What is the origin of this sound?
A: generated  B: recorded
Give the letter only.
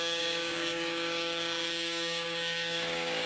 A